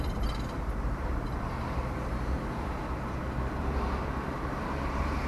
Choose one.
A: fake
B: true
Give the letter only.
A